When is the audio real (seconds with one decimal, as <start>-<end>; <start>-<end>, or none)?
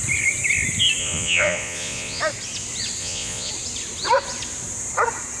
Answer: 0.0-1.0; 2.2-3.0; 3.5-5.4